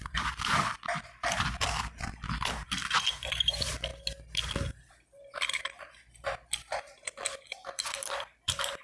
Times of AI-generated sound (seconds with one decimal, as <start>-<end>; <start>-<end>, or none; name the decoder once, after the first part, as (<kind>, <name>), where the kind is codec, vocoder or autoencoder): 0.0-2.8 (vocoder, BigVGAN v2); 3.3-3.9; 4.9-8.8